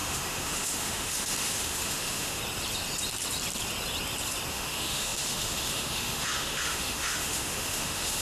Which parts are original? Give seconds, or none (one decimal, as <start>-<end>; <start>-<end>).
2.4-4.5